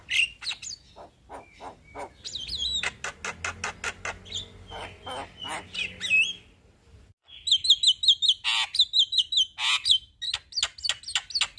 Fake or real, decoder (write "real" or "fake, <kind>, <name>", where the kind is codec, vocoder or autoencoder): real